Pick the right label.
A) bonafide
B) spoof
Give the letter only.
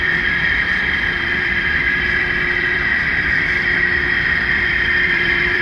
B